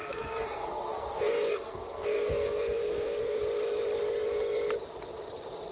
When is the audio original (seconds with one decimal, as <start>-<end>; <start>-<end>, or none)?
3.4-5.7